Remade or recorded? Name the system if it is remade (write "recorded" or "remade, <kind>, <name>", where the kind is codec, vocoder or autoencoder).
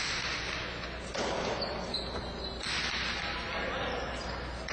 recorded